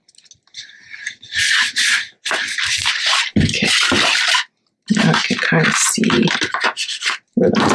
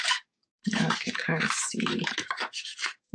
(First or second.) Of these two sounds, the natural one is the first